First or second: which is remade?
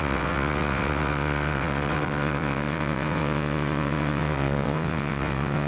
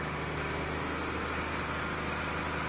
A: first